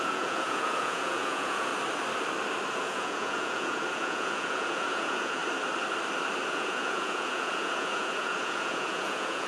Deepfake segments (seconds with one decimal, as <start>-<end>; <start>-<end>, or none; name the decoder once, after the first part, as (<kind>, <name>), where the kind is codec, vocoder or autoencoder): 0.0-1.7 (vocoder, Vocos); 2.7-5.4; 6.5-9.5